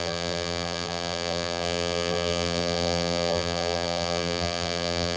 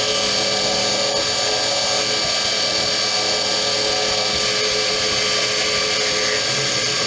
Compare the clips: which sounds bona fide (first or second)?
second